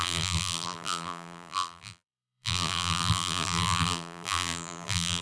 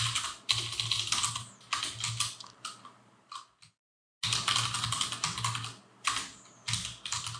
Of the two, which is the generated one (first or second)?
first